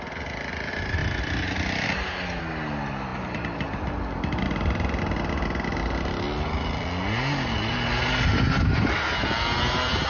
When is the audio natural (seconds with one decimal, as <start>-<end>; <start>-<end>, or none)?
0.0-10.1